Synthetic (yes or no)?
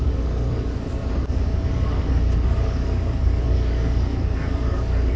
yes